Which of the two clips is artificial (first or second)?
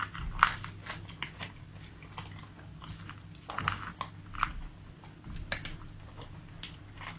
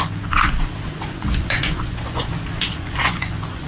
second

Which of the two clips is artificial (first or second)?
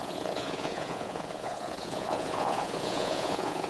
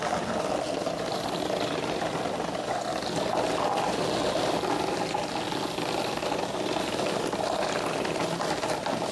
first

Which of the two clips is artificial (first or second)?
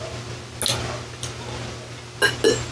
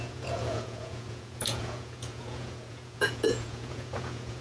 second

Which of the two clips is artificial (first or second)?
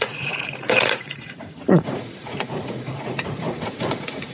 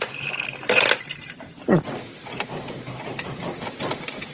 first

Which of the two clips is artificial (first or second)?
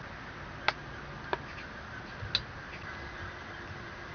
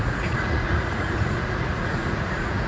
second